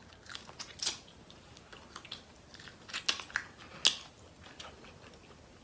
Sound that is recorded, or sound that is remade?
recorded